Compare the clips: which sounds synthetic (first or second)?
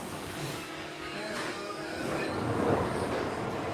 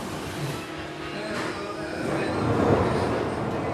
first